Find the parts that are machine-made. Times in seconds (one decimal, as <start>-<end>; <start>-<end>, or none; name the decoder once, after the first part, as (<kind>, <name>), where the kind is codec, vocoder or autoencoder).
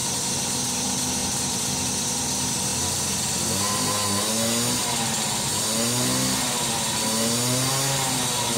0.0-0.5 (vocoder, BigVGAN v2)